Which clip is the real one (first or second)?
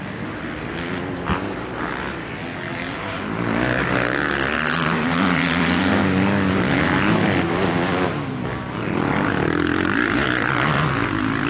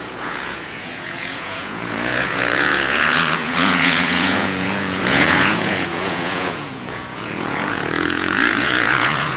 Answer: first